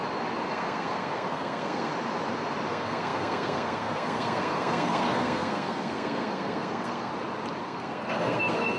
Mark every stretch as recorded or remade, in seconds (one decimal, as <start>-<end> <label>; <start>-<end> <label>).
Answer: 0.0-0.5 recorded; 0.5-1.9 remade; 1.9-2.7 recorded; 2.7-7.1 remade; 7.1-7.6 recorded; 7.6-8.8 remade